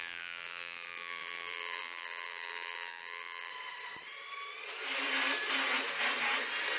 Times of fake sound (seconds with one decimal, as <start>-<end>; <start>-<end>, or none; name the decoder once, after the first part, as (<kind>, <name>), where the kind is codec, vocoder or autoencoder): 0.0-3.5 (vocoder, BigVGAN v2)